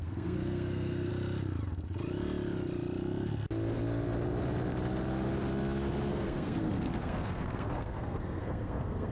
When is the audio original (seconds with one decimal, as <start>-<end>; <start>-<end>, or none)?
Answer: 1.1-6.1